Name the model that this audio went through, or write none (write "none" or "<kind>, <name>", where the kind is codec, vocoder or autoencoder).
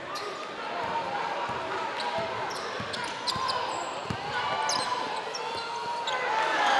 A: none